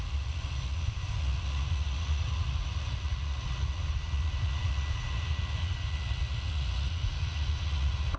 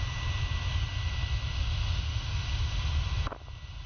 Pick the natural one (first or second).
second